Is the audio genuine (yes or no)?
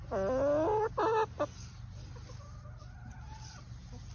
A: yes